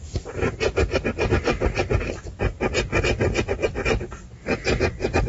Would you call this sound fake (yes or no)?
no